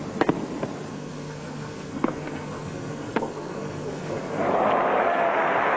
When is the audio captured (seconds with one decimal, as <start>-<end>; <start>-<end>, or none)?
0.0-0.9; 4.4-5.8